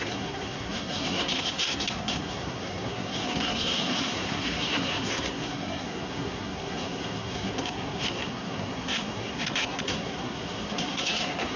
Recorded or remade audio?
remade